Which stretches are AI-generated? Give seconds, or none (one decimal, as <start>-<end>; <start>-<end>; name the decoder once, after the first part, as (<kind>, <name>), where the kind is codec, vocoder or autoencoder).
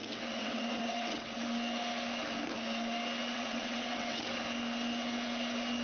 0.0-1.4 (vocoder, WaveNeXt); 3.3-4.4